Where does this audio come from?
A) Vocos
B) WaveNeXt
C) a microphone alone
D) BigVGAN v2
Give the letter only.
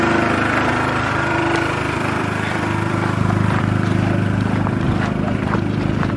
D